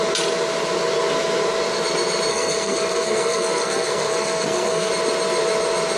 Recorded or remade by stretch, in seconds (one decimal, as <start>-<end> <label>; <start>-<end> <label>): 0.0-2.3 recorded; 2.3-4.9 remade; 4.9-6.0 recorded